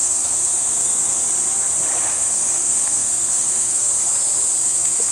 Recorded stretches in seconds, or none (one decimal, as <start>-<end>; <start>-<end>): 1.2-2.1; 3.9-4.6